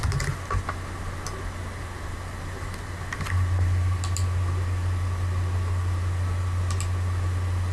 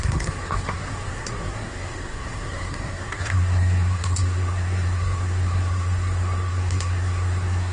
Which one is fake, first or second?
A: second